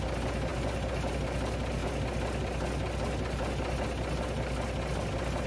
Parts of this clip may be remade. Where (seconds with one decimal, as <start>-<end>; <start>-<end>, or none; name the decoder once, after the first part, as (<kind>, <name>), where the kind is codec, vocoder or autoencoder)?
none